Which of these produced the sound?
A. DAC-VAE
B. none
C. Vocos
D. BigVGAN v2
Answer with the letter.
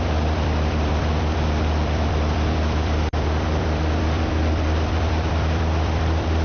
D